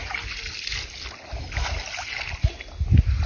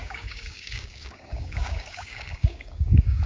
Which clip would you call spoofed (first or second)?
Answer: second